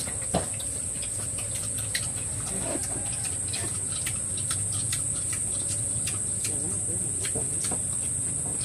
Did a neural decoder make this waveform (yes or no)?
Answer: no